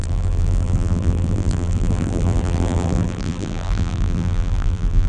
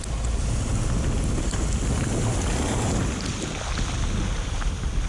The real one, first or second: second